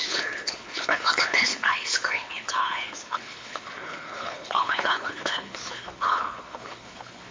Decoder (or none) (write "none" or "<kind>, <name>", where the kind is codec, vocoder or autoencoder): codec, HILCodec